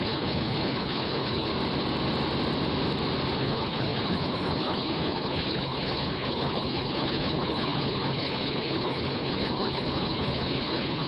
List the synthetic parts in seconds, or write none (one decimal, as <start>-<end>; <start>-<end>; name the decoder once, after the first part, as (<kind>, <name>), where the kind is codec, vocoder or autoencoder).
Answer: 0.0-1.5 (codec, HILCodec); 3.4-11.1